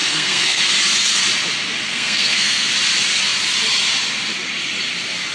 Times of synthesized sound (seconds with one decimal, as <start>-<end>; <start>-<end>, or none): 0.0-0.6; 1.9-2.7